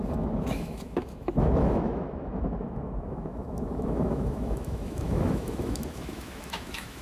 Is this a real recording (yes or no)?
no